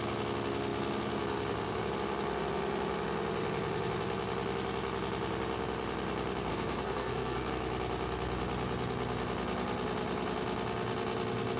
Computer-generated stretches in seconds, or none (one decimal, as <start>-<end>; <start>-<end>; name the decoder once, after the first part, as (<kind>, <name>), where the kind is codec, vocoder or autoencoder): 6.5-7.5 (codec, SNAC)